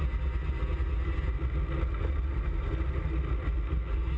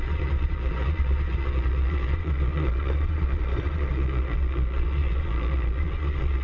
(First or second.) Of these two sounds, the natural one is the first